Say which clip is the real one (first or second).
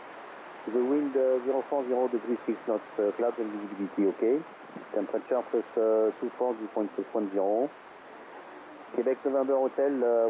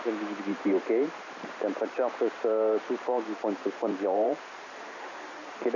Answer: first